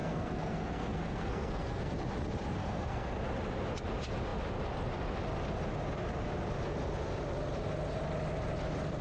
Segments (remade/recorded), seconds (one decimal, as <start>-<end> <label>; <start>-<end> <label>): 0.0-1.9 remade; 1.9-2.6 recorded; 2.6-3.2 remade; 3.2-9.0 recorded